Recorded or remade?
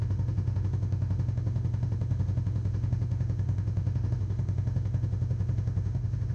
remade